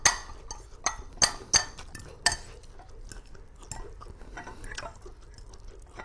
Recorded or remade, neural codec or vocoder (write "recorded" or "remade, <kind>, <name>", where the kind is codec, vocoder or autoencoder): recorded